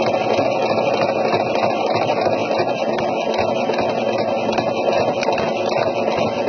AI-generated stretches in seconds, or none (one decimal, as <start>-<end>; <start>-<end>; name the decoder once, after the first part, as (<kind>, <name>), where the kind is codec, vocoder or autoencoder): none